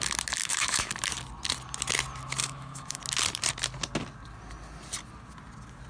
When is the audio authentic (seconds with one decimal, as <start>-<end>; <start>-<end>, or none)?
0.0-0.4; 0.9-2.4; 3.0-5.9